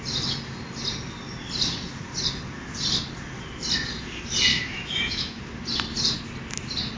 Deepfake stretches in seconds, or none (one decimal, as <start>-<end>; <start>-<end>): 4.5-5.4